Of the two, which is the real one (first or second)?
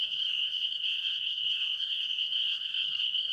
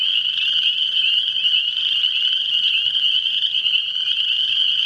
second